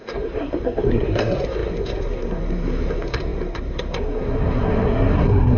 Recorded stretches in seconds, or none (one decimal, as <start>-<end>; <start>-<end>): none